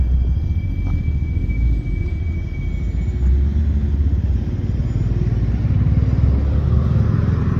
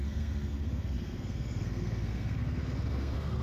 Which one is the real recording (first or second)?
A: first